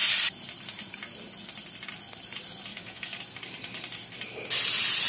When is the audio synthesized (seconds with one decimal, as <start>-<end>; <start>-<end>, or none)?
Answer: 2.7-3.2